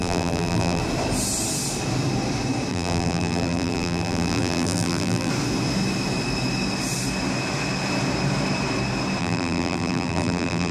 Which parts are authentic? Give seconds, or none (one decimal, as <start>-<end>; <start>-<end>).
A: 0.8-2.7; 5.3-9.2